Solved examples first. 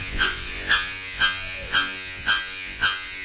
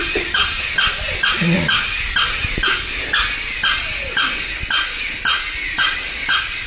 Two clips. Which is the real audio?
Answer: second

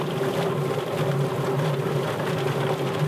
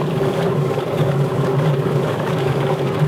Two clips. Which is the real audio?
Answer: first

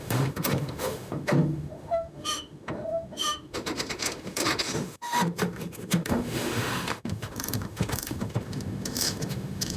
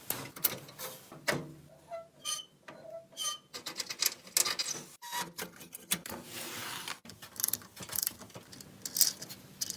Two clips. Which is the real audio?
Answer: second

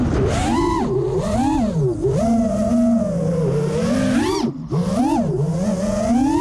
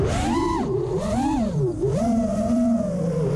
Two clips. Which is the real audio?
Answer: first